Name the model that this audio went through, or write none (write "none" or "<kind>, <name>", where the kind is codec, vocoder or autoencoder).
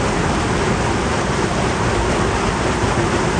none